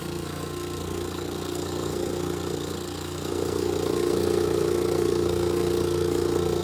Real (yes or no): no